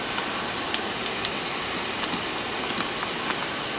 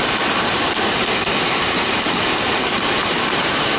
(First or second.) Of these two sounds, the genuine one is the first